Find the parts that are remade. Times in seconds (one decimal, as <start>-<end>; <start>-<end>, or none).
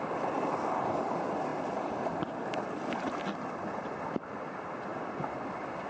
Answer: none